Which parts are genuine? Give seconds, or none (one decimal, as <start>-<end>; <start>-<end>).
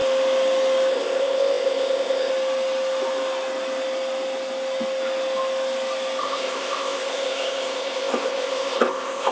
0.0-0.9; 2.3-6.2